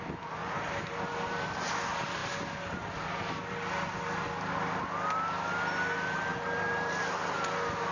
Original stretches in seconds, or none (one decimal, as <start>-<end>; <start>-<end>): 0.0-0.4; 0.9-2.2; 4.8-7.9